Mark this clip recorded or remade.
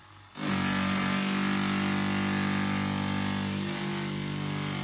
recorded